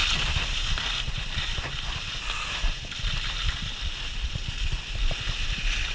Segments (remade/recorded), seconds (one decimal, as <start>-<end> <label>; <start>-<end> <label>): 0.0-5.9 recorded